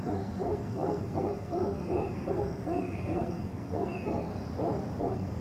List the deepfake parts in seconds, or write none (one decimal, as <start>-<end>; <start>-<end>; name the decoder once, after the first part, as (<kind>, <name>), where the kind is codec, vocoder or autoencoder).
0.0-4.3 (codec, SNAC); 5.0-5.4